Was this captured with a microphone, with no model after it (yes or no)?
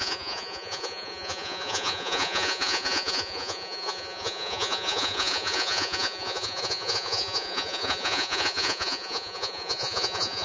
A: no